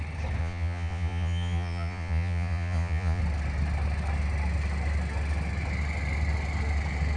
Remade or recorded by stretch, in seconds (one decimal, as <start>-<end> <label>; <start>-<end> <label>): 0.0-0.4 recorded; 0.4-3.2 remade; 3.2-7.2 recorded